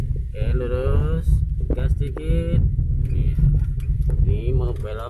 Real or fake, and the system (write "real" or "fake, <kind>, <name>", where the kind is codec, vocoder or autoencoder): real